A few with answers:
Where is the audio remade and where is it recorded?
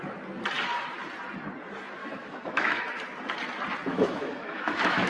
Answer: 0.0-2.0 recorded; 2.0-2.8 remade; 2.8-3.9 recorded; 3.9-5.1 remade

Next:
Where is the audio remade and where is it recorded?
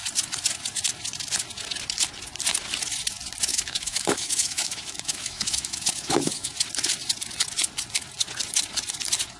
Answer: 0.0-3.5 recorded; 3.5-6.5 remade; 6.5-9.4 recorded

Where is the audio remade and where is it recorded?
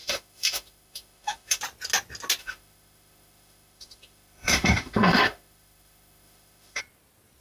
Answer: 0.0-1.6 remade; 1.6-2.4 recorded; 2.4-6.8 remade; 6.8-7.4 recorded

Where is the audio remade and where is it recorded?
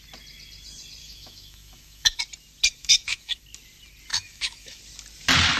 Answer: 0.0-1.0 recorded; 1.0-2.2 remade; 2.2-2.8 recorded; 2.8-3.4 remade; 3.4-4.1 recorded; 4.1-4.8 remade; 4.8-5.6 recorded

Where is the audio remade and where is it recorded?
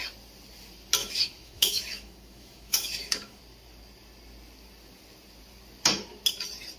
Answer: 0.0-1.0 recorded; 1.0-3.4 remade; 3.4-6.8 recorded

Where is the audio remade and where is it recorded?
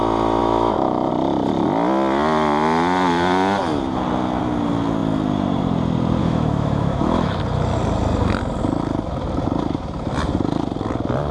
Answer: 0.0-0.4 recorded; 0.4-1.1 remade; 1.1-6.2 recorded; 6.2-7.4 remade; 7.4-11.3 recorded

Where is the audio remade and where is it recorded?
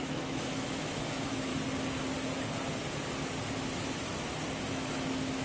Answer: 0.0-1.5 remade; 1.5-4.7 recorded; 4.7-5.4 remade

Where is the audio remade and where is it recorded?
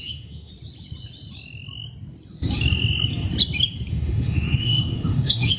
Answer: 0.0-0.5 remade; 0.5-3.9 recorded; 3.9-5.6 remade